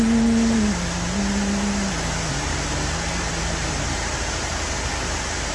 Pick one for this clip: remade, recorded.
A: recorded